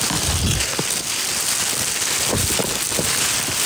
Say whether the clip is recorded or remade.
recorded